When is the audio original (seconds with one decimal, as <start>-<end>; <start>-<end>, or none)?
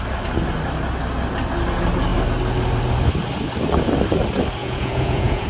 0.0-4.6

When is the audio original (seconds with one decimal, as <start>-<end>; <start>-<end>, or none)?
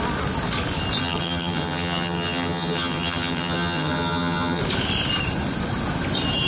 0.0-1.0; 4.6-6.5